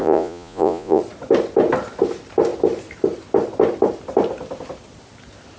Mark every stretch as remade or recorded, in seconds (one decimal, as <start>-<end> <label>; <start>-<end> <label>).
0.0-1.0 remade; 1.0-5.6 recorded